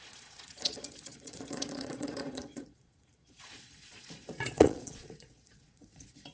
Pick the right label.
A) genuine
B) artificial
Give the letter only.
B